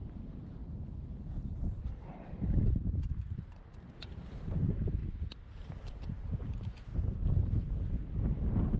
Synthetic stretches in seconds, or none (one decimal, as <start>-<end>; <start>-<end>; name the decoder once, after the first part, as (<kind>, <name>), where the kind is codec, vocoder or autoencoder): 0.0-5.0 (vocoder, BigVGAN v2); 5.9-6.9

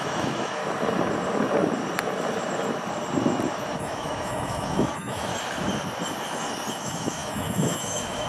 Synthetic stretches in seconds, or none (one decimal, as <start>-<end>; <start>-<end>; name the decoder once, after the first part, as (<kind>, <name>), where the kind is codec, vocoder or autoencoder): 0.0-0.6 (autoencoder, DAC-VAE); 3.8-5.3; 6.7-8.3

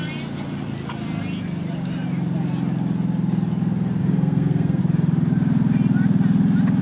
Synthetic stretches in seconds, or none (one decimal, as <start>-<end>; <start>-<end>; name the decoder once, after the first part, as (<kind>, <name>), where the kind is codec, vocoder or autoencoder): 4.0-4.8 (codec, SNAC)

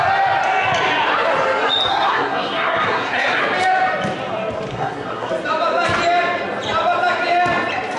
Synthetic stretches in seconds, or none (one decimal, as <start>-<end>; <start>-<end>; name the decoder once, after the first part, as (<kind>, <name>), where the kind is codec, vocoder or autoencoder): 1.9-3.4 (codec, SNAC); 4.7-5.3

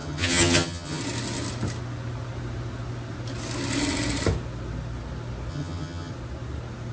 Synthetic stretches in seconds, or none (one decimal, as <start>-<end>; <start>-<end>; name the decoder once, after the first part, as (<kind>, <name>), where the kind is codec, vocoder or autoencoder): 0.0-1.0 (vocoder, HiFi-GAN); 5.5-6.1